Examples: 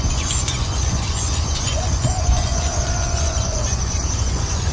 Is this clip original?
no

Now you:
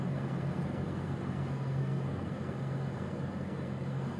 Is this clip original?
no